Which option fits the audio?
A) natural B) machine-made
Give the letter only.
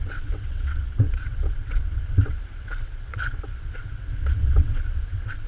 B